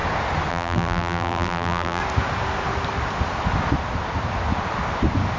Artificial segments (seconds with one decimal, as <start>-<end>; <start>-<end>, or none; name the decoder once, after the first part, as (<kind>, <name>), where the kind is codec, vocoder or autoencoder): 0.5-2.0 (vocoder, BigVGAN v2)